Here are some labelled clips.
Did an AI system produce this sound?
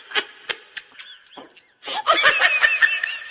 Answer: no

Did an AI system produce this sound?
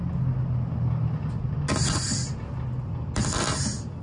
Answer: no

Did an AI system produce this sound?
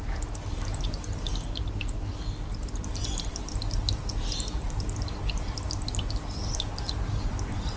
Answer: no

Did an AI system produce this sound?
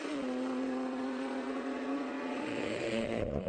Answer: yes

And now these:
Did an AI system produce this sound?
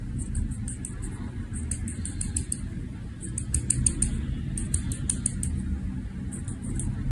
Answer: no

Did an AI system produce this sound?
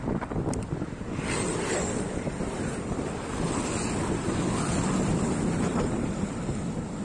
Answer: no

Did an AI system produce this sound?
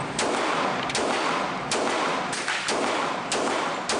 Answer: no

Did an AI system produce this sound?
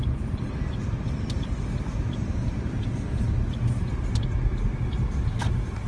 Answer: no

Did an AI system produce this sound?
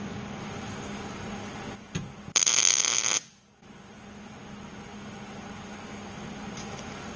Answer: no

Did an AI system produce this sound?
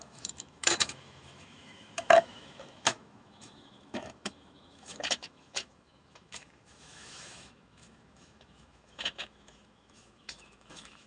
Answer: yes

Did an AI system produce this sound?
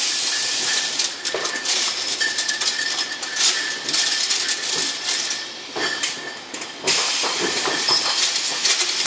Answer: no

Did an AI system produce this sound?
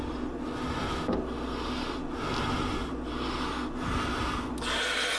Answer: no